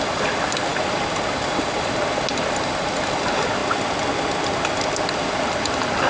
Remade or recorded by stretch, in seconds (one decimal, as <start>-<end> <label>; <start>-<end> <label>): 0.0-0.7 remade; 0.7-2.4 recorded; 2.4-3.6 remade; 3.6-5.5 recorded; 5.5-6.1 remade